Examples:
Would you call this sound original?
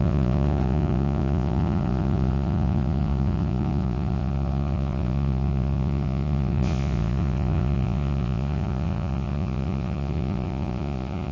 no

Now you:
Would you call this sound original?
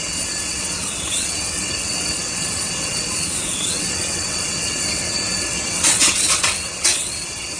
no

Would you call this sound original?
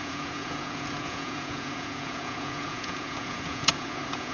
no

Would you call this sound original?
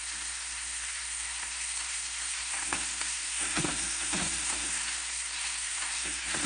no